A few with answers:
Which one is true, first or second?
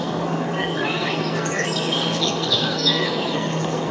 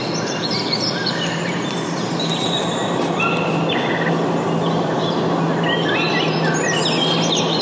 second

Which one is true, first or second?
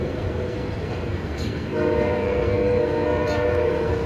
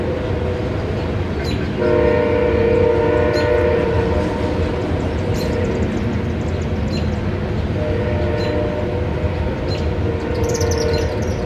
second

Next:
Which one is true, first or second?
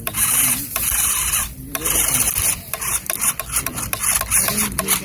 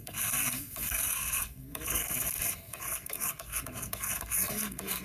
first